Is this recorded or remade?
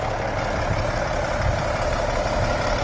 recorded